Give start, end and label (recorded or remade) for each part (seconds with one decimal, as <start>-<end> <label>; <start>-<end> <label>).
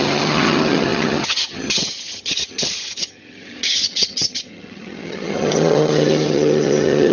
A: 0.0-7.1 remade